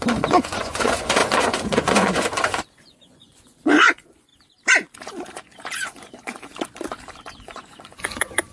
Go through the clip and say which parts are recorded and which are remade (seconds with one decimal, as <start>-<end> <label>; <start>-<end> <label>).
0.0-4.3 remade; 4.3-5.0 recorded; 5.0-6.5 remade; 6.5-7.3 recorded; 7.3-8.5 remade

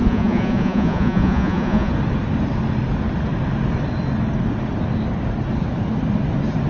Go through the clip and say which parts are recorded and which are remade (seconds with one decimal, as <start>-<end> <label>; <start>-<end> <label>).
0.0-1.9 remade; 1.9-6.7 recorded